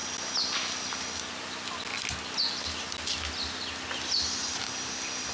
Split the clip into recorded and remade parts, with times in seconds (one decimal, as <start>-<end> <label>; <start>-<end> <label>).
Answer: 0.0-5.3 recorded